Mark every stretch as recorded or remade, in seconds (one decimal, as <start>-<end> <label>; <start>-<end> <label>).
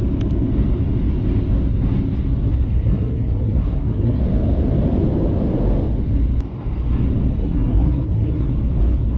0.0-2.5 recorded; 2.5-4.2 remade; 4.2-7.3 recorded; 7.3-8.5 remade; 8.5-9.2 recorded